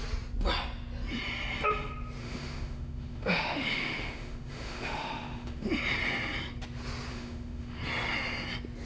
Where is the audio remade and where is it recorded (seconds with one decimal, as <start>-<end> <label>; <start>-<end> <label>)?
0.0-2.2 recorded; 2.2-5.7 remade; 5.7-7.1 recorded; 7.1-7.8 remade; 7.8-8.9 recorded